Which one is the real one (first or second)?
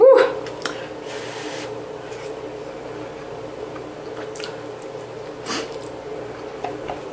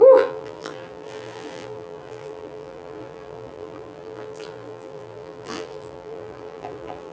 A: first